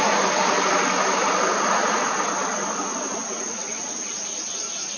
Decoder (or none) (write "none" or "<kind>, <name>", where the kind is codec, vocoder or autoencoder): none